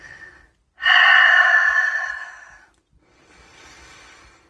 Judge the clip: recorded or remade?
recorded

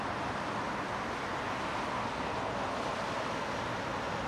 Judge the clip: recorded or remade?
recorded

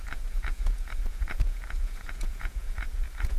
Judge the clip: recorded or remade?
remade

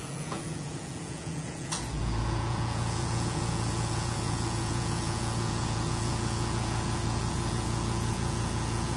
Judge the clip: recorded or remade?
remade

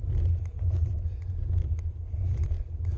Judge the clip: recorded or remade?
recorded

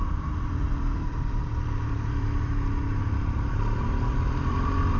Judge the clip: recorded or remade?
remade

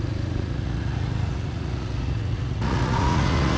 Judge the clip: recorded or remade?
remade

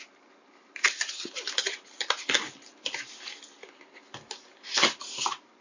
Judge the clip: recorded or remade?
recorded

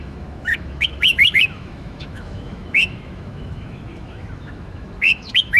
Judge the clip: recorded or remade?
remade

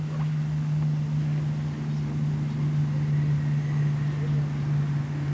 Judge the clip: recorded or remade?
recorded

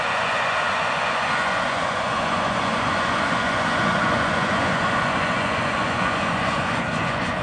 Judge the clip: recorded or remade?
remade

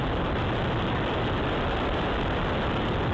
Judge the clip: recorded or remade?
recorded